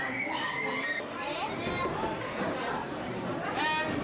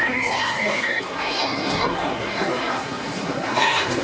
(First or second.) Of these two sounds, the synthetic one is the second